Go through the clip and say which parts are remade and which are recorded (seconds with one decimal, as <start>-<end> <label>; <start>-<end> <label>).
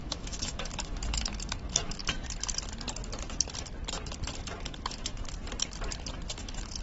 0.0-2.0 remade; 2.0-4.4 recorded; 4.4-5.2 remade; 5.2-6.3 recorded; 6.3-6.8 remade